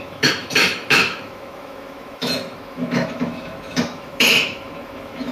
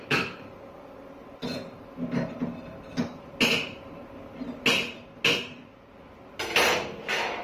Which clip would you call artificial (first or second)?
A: first